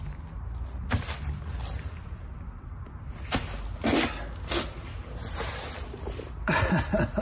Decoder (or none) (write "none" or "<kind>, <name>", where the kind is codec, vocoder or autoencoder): none